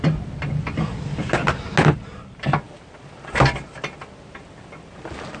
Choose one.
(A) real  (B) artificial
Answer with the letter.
A